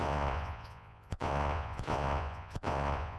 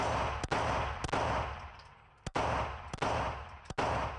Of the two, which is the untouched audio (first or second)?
second